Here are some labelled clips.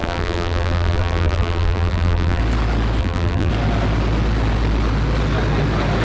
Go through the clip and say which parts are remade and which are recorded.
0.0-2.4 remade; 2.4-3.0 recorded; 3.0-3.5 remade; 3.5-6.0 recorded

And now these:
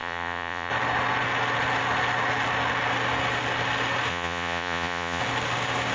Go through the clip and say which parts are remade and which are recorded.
0.0-0.7 remade; 0.7-4.1 recorded; 4.1-5.2 remade; 5.2-5.9 recorded

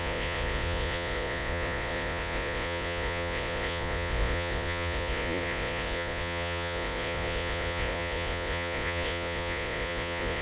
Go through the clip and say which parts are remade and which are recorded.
0.0-10.4 remade

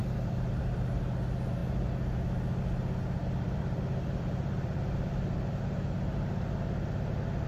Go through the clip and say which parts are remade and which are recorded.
0.0-1.0 remade; 1.0-3.2 recorded; 3.2-6.2 remade; 6.2-7.5 recorded

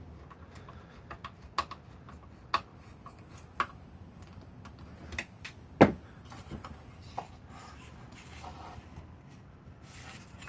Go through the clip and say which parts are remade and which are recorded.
0.0-10.5 recorded

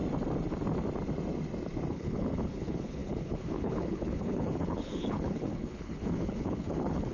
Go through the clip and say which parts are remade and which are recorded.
0.0-1.9 recorded; 1.9-7.1 remade